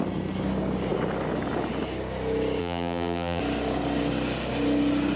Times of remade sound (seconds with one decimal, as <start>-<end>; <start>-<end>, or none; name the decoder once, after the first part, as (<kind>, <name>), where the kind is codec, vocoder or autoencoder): 2.6-3.4 (vocoder, BigVGAN v2)